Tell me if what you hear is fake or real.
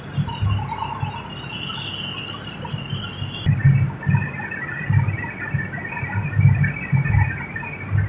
real